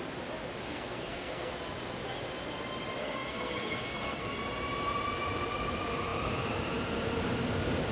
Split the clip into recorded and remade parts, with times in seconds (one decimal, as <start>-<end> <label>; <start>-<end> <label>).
0.0-0.7 recorded; 0.7-1.5 remade; 1.5-3.0 recorded; 3.0-4.3 remade; 4.3-7.9 recorded